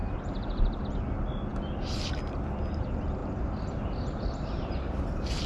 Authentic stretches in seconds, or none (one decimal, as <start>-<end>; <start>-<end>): 0.8-3.2